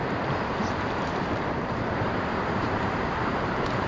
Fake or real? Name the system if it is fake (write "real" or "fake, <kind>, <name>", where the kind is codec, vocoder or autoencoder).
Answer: fake, vocoder, BigVGAN v2